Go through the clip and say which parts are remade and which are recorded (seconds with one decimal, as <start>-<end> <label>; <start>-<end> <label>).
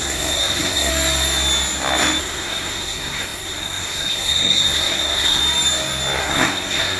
0.0-0.9 remade; 0.9-2.2 recorded; 2.2-5.4 remade; 5.4-6.2 recorded; 6.2-7.0 remade